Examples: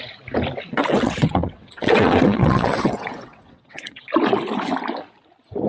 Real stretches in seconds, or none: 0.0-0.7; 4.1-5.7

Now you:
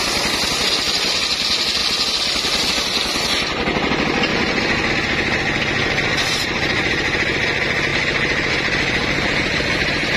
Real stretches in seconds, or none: 0.0-4.3; 4.9-5.8; 6.9-7.9

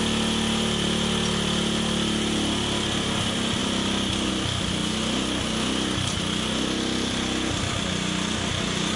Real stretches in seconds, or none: 0.0-9.0